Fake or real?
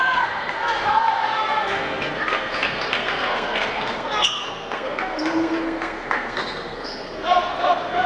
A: fake